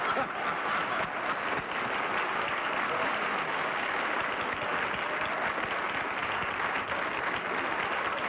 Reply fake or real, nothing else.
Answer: real